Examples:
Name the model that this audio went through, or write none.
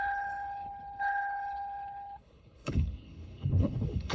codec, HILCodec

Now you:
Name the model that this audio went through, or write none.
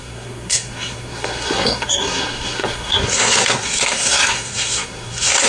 codec, SNAC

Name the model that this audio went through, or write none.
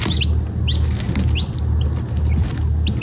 none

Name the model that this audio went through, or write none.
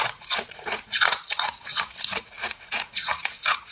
vocoder, Vocos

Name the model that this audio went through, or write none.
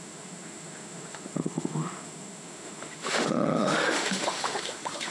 autoencoder, DAC-VAE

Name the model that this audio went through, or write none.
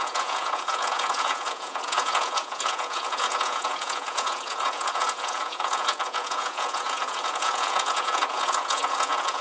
vocoder, Vocos